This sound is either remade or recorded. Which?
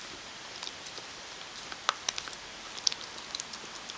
recorded